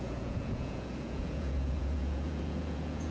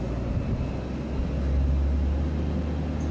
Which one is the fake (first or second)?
first